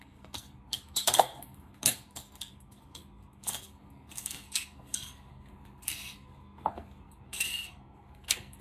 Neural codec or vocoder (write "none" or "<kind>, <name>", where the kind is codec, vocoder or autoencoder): codec, SNAC